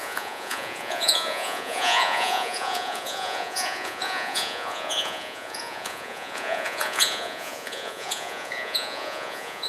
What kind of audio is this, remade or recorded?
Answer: remade